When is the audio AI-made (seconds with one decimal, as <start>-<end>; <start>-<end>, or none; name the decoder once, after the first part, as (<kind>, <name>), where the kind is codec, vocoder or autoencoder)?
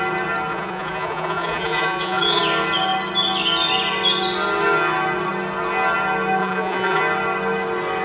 0.5-2.4 (vocoder, Vocos); 6.4-7.0